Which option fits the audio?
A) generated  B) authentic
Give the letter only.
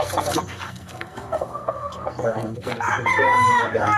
A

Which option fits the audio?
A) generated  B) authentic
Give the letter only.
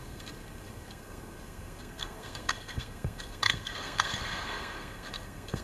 A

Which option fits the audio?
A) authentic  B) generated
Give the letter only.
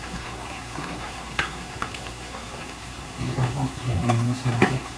B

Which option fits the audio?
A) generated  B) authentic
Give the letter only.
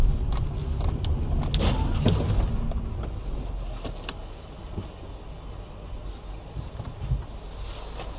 B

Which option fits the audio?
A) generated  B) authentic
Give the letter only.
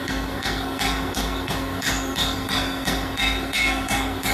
A